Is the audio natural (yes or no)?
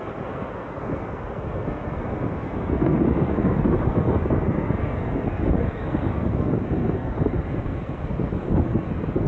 no